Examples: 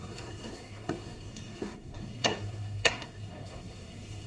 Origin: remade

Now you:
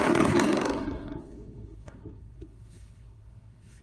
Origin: remade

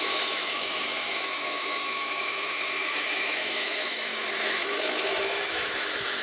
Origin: remade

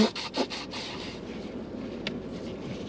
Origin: recorded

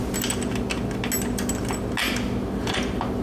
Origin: recorded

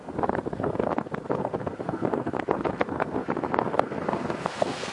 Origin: remade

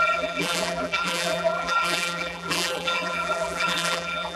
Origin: remade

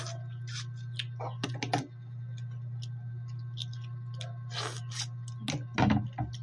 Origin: recorded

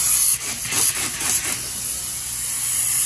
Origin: recorded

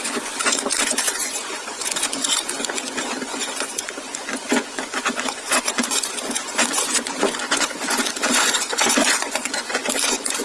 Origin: remade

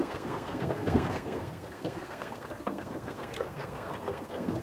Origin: remade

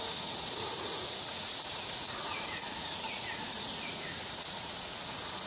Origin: remade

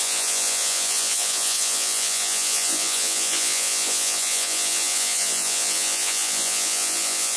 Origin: remade